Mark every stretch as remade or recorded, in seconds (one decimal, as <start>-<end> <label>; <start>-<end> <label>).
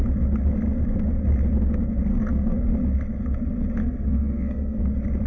0.0-2.1 recorded; 2.1-2.7 remade; 2.7-3.8 recorded; 3.8-4.8 remade; 4.8-5.3 recorded